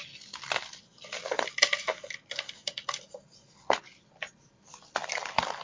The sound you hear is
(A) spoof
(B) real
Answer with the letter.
B